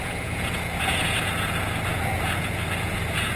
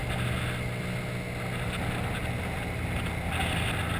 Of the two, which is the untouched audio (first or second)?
second